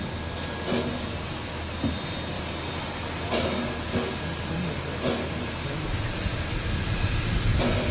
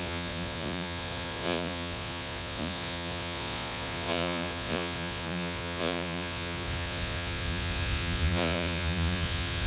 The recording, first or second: first